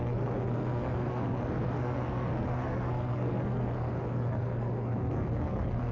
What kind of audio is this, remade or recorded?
remade